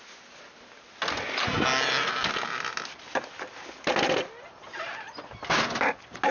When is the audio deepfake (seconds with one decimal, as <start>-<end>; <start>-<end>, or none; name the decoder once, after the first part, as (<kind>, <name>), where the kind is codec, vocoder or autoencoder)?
none

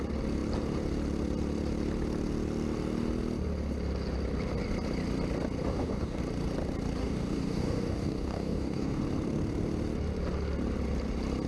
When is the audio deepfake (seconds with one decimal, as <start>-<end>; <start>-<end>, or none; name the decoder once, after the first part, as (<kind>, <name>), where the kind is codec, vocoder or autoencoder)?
5.7-6.2 (codec, DAC); 7.0-9.0

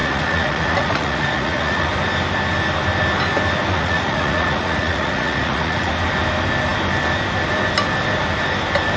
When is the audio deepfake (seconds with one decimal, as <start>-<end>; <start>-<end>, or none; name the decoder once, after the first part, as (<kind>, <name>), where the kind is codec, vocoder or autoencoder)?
0.0-1.9 (vocoder, Vocos); 3.7-5.9

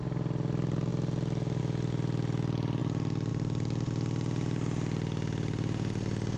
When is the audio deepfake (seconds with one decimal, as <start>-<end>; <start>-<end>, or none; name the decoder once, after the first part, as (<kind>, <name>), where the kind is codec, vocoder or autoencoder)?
none